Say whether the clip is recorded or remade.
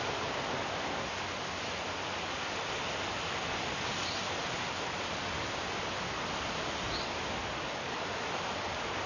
recorded